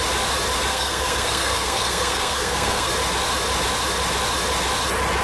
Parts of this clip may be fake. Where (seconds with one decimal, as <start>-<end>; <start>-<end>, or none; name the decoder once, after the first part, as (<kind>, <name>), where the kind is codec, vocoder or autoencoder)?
0.7-2.9 (codec, SNAC)